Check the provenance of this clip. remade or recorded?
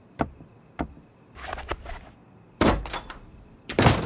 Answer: recorded